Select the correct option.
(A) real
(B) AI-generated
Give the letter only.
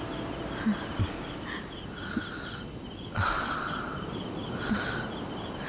A